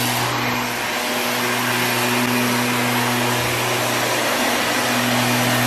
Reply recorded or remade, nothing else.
recorded